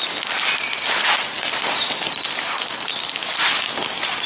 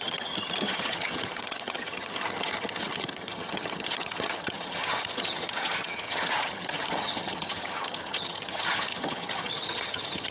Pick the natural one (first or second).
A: first